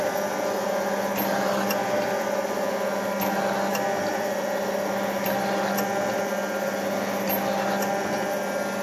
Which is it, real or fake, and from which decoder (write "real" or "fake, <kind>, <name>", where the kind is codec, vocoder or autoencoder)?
real